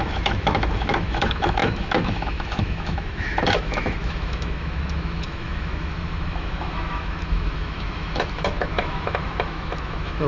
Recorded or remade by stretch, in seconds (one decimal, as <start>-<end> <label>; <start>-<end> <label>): 0.0-10.3 remade